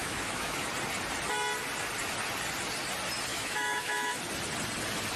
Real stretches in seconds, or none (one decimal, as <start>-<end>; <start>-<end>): 0.7-3.3; 4.2-5.2